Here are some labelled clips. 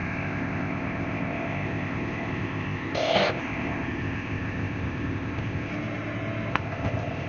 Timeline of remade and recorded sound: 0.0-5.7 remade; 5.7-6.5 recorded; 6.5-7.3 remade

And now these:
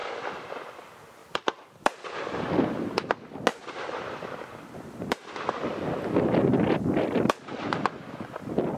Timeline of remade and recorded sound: 0.0-0.7 remade; 0.7-1.2 recorded; 1.2-2.5 remade; 2.5-3.5 recorded; 3.5-5.2 remade; 5.2-8.8 recorded

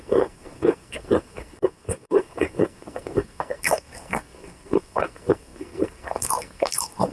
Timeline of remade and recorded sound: 0.0-7.1 remade

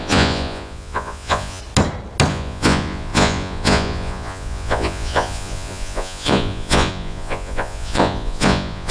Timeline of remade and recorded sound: 0.0-1.6 remade; 1.6-2.3 recorded; 2.3-8.9 remade

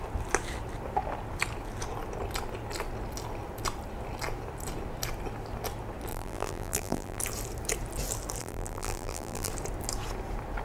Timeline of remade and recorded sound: 0.0-6.1 recorded; 6.1-7.2 remade; 7.2-8.4 recorded; 8.4-9.5 remade; 9.5-10.6 recorded